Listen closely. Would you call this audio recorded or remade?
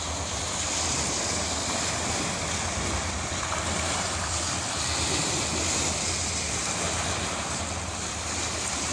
recorded